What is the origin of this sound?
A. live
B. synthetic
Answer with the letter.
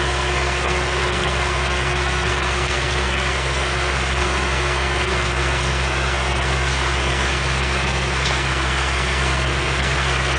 B